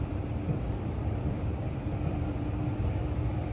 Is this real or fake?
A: fake